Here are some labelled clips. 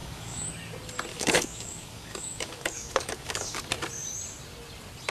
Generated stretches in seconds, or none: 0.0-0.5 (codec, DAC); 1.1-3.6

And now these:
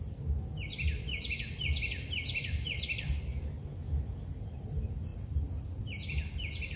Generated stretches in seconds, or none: none

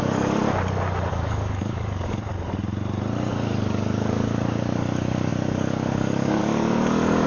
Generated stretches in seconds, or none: 0.0-0.4 (codec, DAC); 1.1-2.3; 3.3-7.3

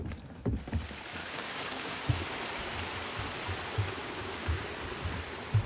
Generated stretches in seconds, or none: 1.2-2.0 (codec, DAC); 4.0-4.6

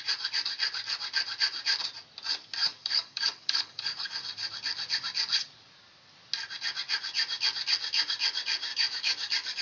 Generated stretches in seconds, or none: 2.6-4.1 (codec, DAC); 8.7-9.6